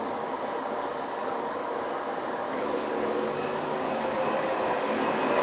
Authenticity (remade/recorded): remade